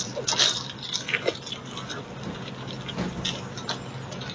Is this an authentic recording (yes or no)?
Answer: yes